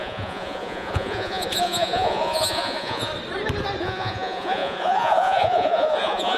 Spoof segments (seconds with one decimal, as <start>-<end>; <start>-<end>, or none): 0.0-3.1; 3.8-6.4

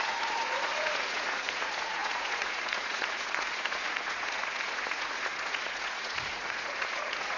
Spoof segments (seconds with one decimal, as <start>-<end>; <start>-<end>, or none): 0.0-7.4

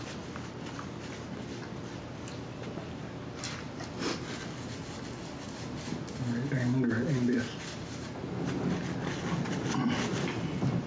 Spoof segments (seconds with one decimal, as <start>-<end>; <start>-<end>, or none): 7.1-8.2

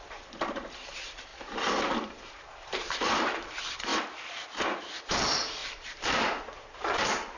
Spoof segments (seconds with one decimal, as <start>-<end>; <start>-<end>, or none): 0.0-3.9; 5.1-7.4